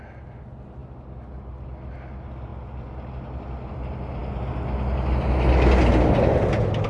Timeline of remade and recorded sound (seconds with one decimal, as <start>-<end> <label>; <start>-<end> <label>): 0.0-6.9 recorded